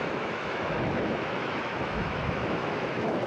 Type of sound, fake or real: fake